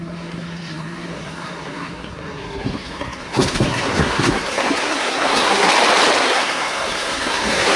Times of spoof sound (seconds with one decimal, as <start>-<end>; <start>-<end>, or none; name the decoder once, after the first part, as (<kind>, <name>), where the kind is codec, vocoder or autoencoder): 0.0-5.7 (codec, SNAC); 6.2-7.8